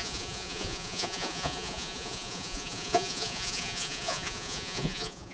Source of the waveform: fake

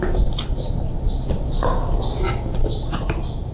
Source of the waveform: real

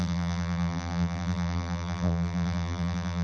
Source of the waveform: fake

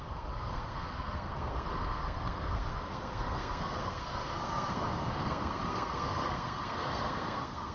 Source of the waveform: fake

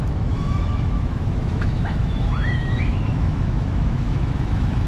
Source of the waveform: fake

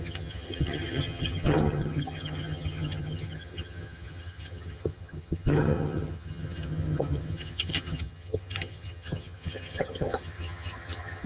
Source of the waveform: fake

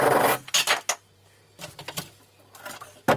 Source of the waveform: real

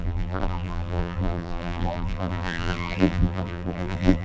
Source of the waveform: fake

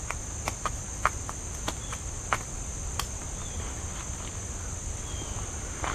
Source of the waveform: real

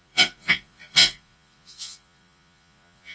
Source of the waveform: fake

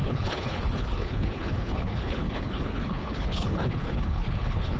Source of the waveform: fake